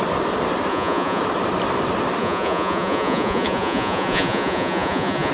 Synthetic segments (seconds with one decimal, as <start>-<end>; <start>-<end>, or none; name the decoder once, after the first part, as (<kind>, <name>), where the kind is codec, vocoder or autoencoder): 0.7-1.2 (vocoder, Vocos); 2.2-5.3